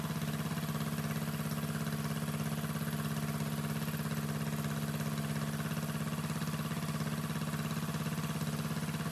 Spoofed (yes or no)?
no